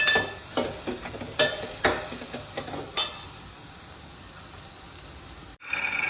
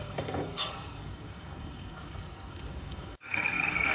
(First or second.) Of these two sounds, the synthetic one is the second